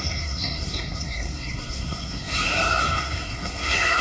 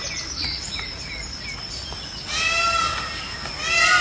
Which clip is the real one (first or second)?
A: second